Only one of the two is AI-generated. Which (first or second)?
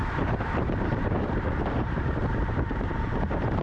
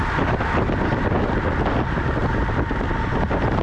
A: first